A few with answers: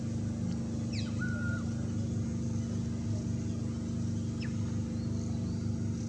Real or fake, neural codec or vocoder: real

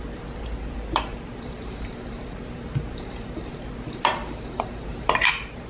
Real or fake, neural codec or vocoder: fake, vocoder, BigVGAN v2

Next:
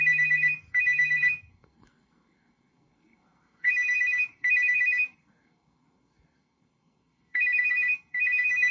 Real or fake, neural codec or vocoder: fake, codec, SNAC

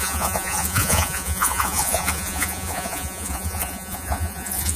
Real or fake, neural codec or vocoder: fake, vocoder, Vocos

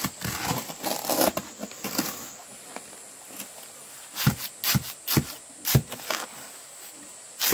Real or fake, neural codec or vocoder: real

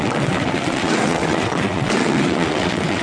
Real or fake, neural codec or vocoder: fake, vocoder, WaveNeXt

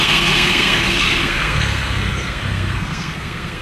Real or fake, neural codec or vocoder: fake, codec, SNAC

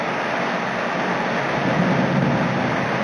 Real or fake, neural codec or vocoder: real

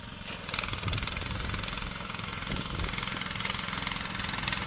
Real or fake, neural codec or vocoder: real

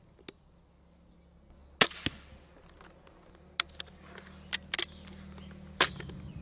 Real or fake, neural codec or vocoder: real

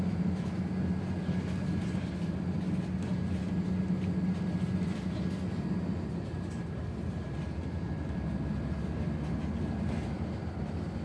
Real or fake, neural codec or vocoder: real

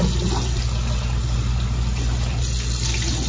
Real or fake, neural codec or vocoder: real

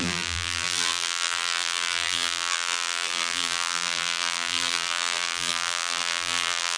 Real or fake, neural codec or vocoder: fake, vocoder, BigVGAN v2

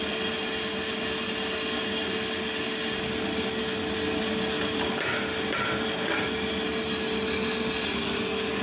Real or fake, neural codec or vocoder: real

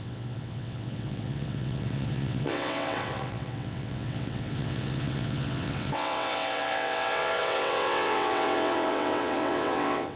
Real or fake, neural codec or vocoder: fake, vocoder, WaveNeXt